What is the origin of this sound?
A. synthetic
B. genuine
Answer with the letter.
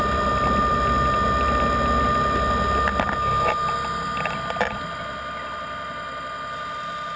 B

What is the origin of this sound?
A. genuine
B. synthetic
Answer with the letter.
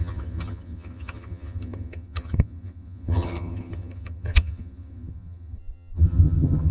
B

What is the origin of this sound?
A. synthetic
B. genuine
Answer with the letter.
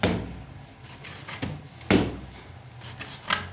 B